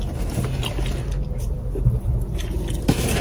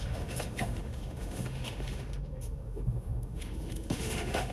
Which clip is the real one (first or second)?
first